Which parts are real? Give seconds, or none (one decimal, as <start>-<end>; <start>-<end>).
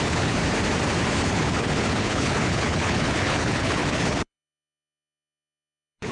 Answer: 0.4-1.1